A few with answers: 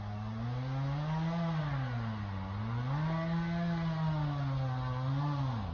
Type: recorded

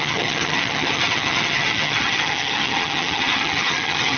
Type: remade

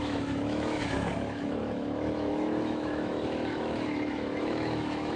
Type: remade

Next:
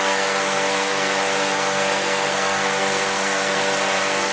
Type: remade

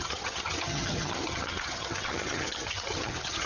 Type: remade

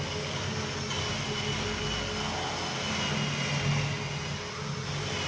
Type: recorded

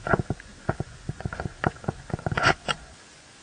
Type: remade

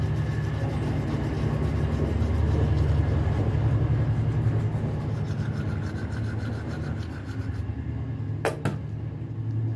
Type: recorded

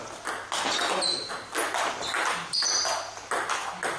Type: recorded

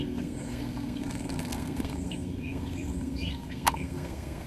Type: remade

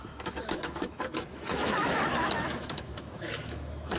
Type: remade